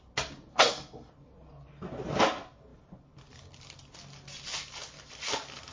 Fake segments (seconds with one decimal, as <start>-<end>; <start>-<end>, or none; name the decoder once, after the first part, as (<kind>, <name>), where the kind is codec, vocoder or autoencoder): 0.5-1.1 (codec, SNAC)